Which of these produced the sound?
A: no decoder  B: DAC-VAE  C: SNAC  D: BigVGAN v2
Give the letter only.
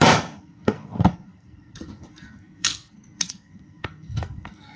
C